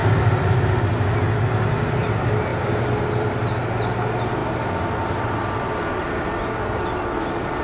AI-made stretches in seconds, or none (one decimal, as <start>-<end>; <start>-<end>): 0.0-0.8; 2.5-3.6